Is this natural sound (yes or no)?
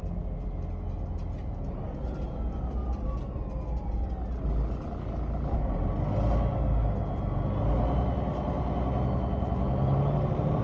yes